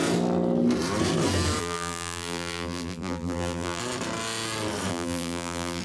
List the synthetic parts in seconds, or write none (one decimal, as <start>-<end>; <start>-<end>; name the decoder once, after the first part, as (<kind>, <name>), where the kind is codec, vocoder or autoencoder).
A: 1.6-3.8 (vocoder, BigVGAN v2); 4.9-5.8